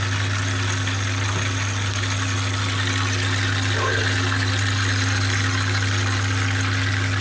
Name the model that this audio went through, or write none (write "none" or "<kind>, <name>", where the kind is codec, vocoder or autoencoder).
none